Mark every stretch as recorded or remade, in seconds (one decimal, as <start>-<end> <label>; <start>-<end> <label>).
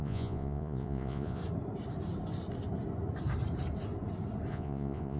0.0-1.4 remade; 1.4-4.5 recorded; 4.5-5.2 remade